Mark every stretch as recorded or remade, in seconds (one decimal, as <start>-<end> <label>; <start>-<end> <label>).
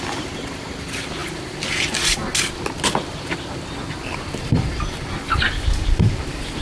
0.0-6.6 recorded